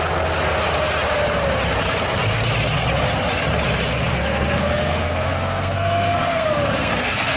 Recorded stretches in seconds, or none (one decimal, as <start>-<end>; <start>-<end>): 0.0-4.1